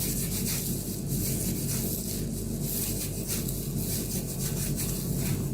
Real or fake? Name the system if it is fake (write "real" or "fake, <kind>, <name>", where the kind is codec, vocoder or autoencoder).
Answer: real